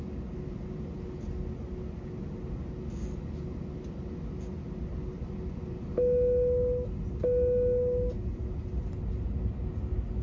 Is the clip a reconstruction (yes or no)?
no